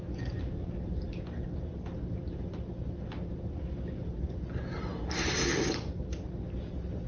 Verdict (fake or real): real